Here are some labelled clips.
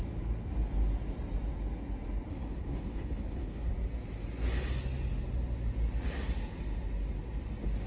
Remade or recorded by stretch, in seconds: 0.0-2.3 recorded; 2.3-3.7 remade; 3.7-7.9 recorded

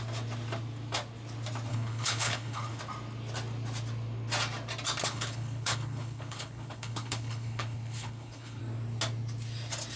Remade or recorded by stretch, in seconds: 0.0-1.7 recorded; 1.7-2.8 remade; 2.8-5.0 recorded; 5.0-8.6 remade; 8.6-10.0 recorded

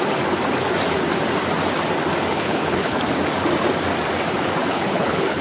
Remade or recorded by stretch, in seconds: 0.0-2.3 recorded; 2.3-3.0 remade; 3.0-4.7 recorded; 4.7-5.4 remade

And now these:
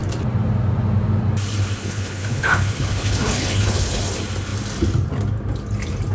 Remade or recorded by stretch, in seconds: 0.0-1.8 recorded; 1.8-4.0 remade; 4.0-6.1 recorded